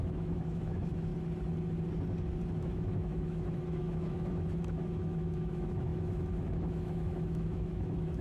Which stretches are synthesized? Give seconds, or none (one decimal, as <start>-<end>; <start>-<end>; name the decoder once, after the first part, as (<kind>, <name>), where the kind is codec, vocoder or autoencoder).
0.0-1.1 (autoencoder, DAC-VAE); 2.6-8.2